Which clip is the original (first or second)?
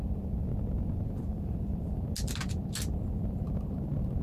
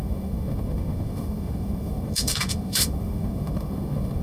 first